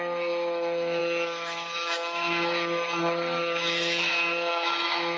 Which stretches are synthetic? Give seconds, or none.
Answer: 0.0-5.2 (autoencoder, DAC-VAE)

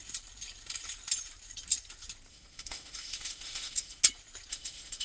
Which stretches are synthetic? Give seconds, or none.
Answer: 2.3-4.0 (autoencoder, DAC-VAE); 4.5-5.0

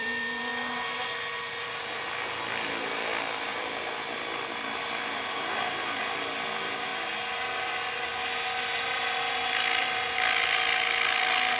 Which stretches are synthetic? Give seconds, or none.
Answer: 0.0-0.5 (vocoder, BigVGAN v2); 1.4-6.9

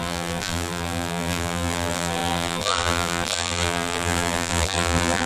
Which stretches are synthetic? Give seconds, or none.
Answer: 0.0-5.3 (vocoder, BigVGAN v2)